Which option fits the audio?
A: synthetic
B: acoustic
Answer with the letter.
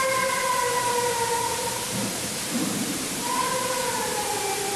A